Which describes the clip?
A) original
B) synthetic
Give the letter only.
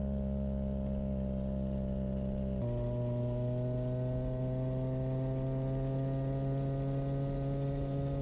A